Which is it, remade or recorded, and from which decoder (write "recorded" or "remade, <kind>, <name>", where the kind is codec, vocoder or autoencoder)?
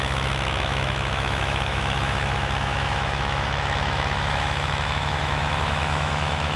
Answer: remade, autoencoder, DAC-VAE